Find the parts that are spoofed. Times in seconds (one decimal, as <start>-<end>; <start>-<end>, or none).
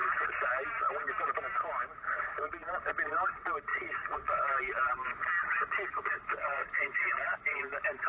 3.7-4.4; 5.4-7.6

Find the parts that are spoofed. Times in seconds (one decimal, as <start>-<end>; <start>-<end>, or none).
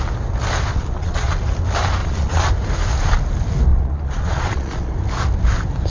0.7-1.3; 2.0-2.5; 3.7-4.9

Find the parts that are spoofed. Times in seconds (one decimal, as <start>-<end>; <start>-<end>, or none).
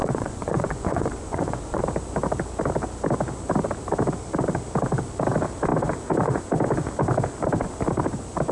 0.0-1.8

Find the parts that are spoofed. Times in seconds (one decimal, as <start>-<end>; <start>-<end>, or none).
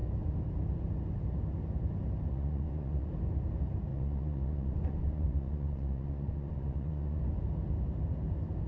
2.3-3.1; 3.9-7.2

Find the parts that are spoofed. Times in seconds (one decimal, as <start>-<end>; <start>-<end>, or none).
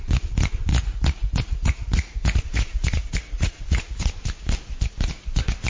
0.7-4.1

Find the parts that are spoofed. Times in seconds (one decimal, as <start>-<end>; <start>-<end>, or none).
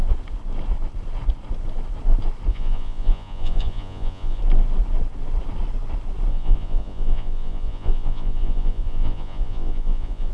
2.5-4.4; 6.3-10.3